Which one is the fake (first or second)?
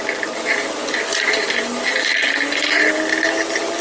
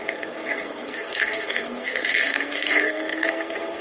second